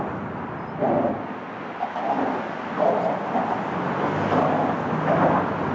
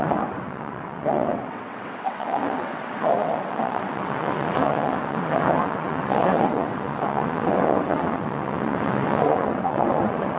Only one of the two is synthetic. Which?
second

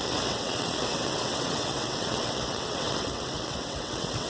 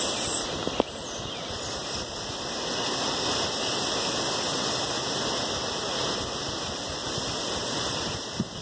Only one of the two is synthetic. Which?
first